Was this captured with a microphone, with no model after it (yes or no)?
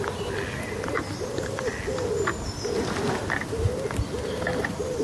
yes